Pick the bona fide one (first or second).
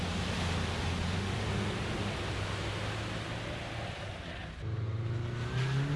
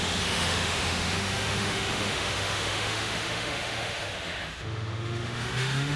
first